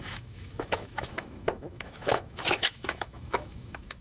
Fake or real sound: fake